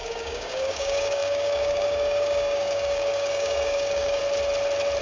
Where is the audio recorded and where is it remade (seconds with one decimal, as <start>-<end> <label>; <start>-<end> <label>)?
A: 0.0-4.2 remade; 4.2-5.0 recorded